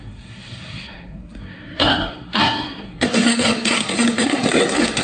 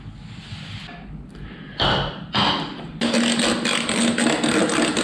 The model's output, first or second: first